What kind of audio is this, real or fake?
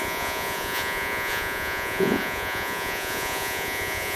fake